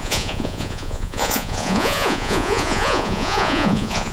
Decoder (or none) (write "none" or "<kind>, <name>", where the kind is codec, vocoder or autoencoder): vocoder, Vocos